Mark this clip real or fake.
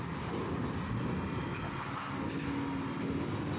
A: real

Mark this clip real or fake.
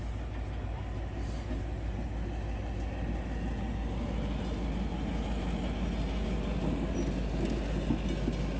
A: real